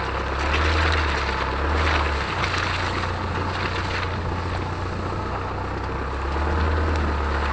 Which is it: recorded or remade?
recorded